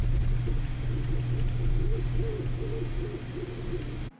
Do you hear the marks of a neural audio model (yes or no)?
no